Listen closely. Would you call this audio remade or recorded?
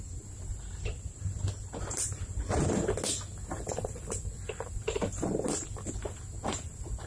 recorded